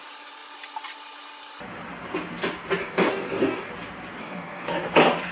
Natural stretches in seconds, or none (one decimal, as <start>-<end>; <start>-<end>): 0.0-2.8; 3.7-4.2; 4.7-5.3